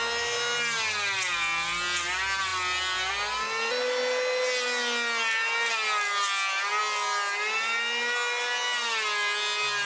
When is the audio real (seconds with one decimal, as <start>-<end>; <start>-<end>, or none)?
0.0-9.9